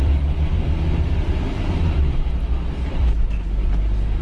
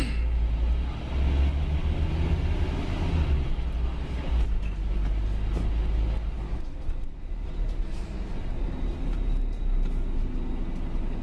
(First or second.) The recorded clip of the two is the second